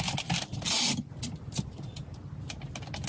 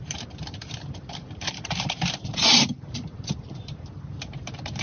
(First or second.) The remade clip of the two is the second